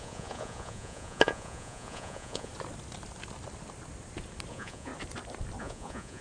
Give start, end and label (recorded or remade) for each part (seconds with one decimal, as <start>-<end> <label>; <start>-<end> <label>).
0.0-2.5 remade; 2.5-4.5 recorded; 4.5-4.9 remade; 4.9-5.6 recorded; 5.6-6.2 remade